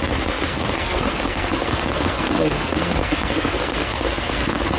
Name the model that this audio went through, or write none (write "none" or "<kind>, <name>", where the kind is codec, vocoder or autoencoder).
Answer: codec, SNAC